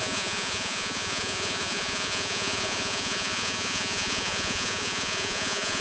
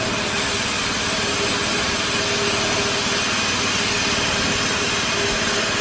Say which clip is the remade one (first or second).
first